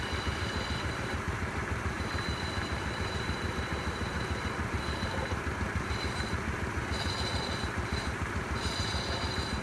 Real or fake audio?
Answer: fake